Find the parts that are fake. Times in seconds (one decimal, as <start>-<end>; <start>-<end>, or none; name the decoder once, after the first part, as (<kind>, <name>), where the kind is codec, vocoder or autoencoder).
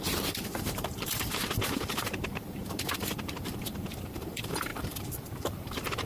0.0-6.1 (vocoder, BigVGAN v2)